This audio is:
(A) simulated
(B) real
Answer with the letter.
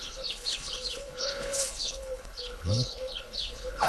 A